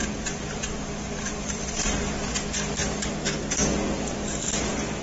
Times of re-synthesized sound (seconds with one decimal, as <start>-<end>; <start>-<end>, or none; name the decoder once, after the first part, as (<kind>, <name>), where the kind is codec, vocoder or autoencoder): 0.0-2.0 (vocoder, BigVGAN v2)